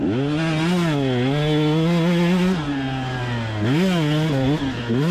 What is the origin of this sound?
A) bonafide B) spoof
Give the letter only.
A